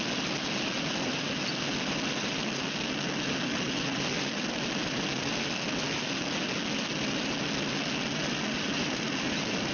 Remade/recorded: recorded